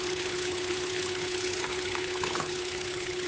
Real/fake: fake